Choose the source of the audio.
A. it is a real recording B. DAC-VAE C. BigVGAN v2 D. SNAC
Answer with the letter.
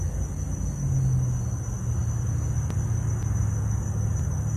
A